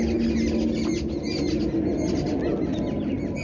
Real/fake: real